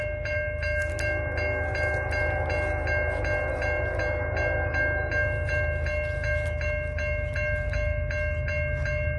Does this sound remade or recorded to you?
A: recorded